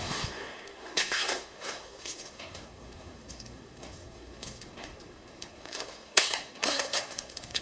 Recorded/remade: remade